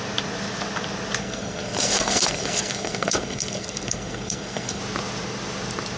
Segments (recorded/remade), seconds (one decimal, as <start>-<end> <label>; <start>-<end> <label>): 0.0-1.2 recorded; 1.2-4.8 remade; 4.8-6.0 recorded